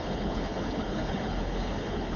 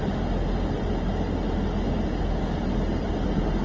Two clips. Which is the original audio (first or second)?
second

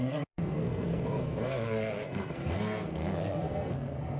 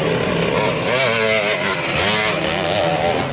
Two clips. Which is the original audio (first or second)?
second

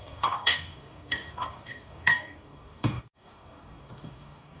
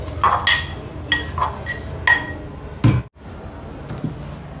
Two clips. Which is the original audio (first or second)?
second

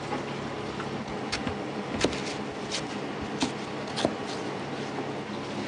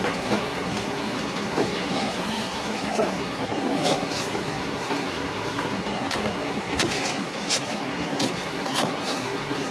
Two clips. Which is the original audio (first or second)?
first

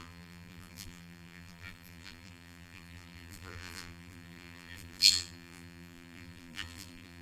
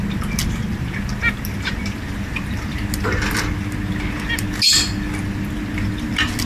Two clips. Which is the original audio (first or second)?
second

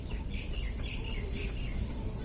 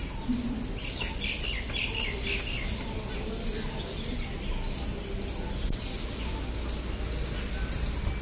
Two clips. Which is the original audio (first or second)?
second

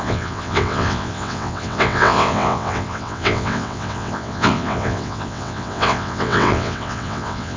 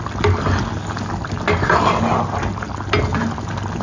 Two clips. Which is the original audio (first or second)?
second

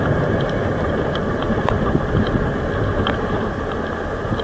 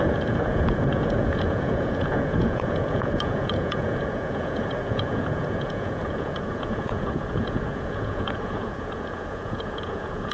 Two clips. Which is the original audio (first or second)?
first